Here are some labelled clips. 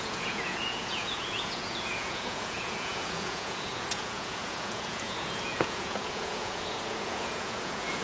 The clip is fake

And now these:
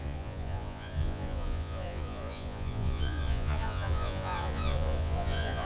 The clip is fake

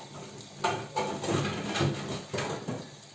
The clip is real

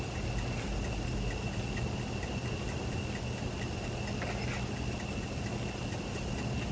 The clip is real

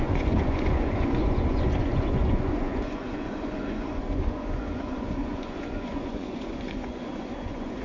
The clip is fake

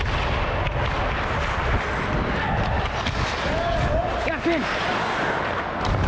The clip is real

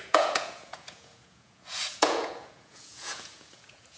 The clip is fake